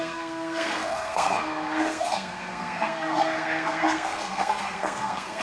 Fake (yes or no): yes